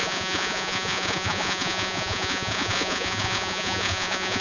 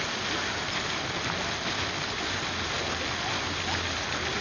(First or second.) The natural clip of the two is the second